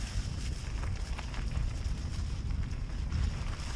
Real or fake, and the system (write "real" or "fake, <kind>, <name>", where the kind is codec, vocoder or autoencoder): real